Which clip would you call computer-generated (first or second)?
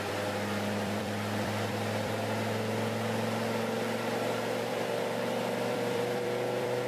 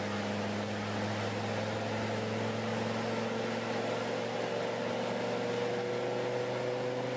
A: first